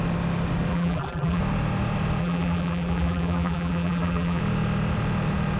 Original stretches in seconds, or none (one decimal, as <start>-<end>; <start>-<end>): 0.0-0.7; 1.4-2.2; 4.4-5.6